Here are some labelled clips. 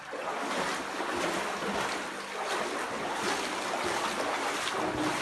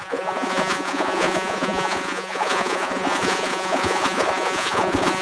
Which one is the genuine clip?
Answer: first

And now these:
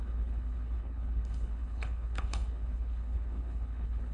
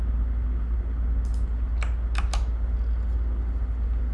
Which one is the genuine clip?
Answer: second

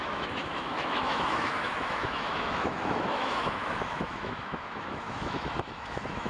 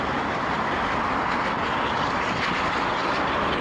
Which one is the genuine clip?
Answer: second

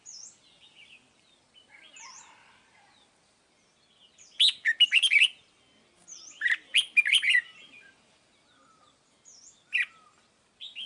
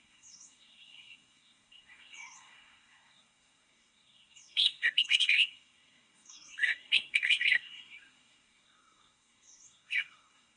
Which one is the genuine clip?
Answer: first